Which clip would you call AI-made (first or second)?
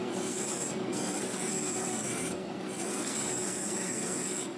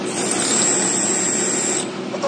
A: first